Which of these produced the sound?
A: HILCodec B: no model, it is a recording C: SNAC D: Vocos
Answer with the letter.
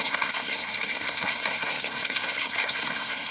C